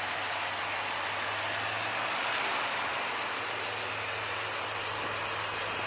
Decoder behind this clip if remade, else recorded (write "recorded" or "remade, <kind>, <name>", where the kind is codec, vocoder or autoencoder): recorded